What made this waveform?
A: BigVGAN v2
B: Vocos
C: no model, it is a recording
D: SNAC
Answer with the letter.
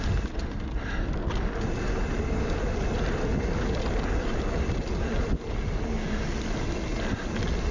C